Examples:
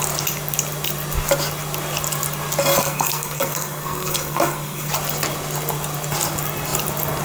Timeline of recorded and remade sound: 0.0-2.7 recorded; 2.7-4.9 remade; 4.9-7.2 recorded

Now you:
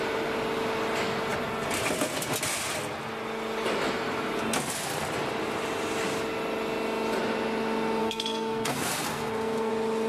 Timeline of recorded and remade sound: 0.0-8.0 recorded; 8.0-9.7 remade; 9.7-10.1 recorded

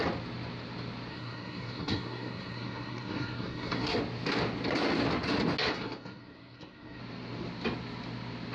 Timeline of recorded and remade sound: 0.0-1.1 recorded; 1.1-4.0 remade; 4.0-5.7 recorded; 5.7-7.0 remade; 7.0-8.5 recorded